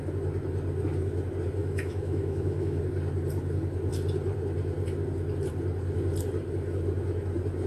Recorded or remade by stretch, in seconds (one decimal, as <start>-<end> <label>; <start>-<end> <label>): 0.0-1.6 recorded; 1.6-2.8 remade; 2.8-7.7 recorded